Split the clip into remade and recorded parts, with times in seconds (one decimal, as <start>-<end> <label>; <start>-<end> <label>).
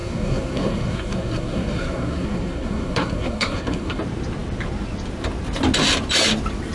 0.0-4.0 remade; 4.0-6.7 recorded